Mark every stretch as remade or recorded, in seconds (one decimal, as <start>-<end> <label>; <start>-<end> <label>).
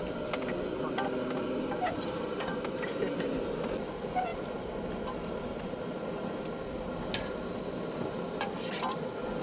0.0-9.4 recorded